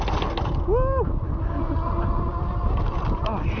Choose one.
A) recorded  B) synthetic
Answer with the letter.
A